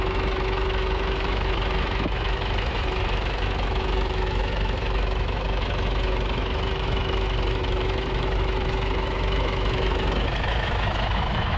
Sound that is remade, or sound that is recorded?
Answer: remade